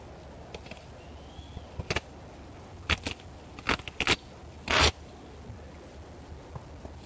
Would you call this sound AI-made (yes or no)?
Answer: no